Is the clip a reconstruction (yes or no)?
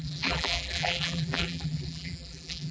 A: yes